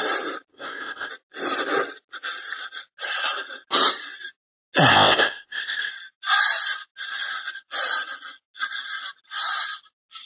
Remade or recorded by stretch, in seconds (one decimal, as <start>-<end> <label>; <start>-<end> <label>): 0.0-0.5 recorded; 0.5-1.1 remade; 1.1-4.9 recorded; 4.9-5.9 remade; 5.9-10.3 recorded